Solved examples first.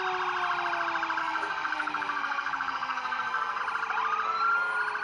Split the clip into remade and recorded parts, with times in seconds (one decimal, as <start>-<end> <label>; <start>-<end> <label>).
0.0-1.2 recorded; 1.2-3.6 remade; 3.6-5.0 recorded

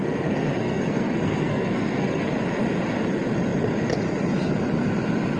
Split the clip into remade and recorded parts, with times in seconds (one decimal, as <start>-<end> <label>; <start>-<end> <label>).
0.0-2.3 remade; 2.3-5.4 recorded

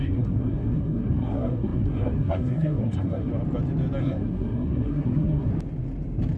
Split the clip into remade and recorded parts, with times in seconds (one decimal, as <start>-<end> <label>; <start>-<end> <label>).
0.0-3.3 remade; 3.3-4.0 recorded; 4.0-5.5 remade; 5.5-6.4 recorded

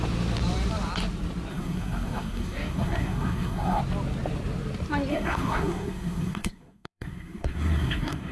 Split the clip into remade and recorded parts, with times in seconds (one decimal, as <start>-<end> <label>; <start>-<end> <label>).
0.0-1.5 recorded; 1.5-3.8 remade; 3.8-5.1 recorded; 5.1-8.3 remade

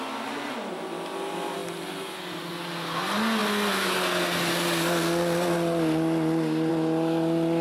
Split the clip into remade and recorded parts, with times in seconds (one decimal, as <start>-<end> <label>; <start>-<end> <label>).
0.0-7.6 recorded